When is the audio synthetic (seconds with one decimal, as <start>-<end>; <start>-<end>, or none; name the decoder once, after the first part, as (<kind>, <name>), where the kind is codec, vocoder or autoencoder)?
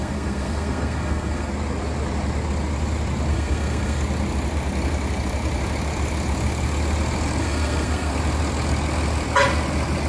0.0-1.5 (codec, SNAC); 3.3-4.0; 7.4-8.1